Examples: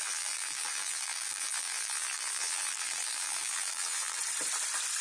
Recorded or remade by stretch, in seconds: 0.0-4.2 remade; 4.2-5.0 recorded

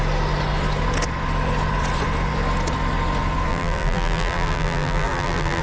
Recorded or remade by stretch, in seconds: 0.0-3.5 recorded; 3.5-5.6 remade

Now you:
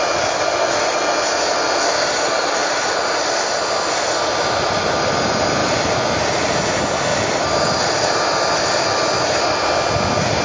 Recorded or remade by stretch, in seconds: 0.0-7.1 recorded; 7.1-9.1 remade; 9.1-10.4 recorded

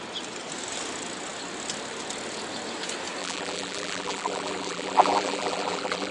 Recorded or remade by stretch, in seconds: 0.0-3.2 recorded; 3.2-6.1 remade